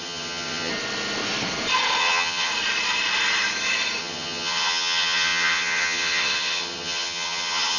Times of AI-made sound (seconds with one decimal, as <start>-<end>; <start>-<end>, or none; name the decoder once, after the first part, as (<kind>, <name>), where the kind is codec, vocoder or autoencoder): 0.0-0.7 (vocoder, HiFi-GAN); 2.0-2.5; 4.0-7.8